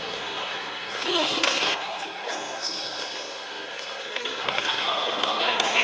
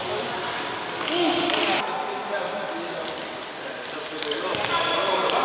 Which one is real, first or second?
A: second